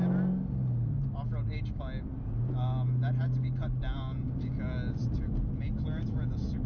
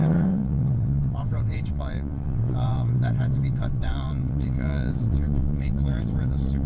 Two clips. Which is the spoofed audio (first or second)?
second